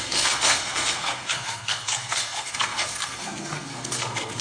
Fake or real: fake